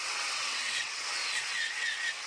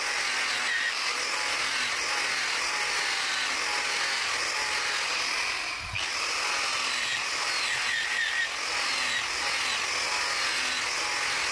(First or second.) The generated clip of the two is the first